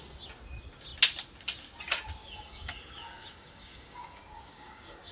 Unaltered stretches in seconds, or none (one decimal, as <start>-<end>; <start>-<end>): 0.0-2.2